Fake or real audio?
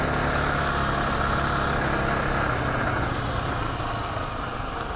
real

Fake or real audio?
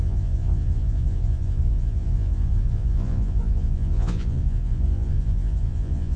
fake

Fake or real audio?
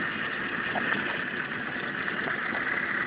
real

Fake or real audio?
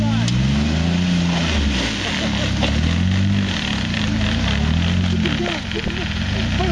real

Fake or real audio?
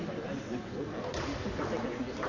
real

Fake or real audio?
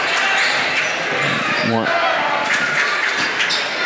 real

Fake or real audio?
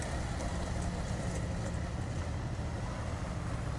real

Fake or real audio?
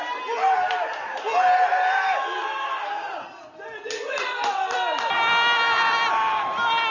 real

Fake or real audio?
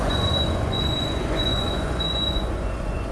fake